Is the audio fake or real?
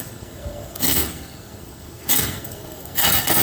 fake